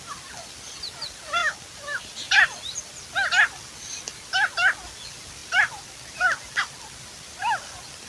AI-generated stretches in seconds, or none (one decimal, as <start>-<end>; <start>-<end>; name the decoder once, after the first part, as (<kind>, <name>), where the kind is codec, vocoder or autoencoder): none